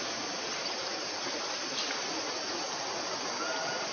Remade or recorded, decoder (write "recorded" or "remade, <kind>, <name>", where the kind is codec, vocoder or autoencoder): recorded